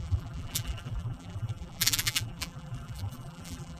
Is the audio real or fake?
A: fake